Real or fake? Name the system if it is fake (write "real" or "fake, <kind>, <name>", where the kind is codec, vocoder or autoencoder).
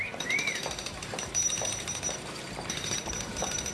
fake, vocoder, BigVGAN v2